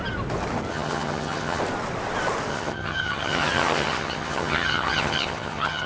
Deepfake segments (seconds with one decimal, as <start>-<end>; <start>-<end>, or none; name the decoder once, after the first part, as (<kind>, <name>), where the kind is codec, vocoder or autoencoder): 0.7-1.6 (vocoder, HiFi-GAN); 2.5-5.9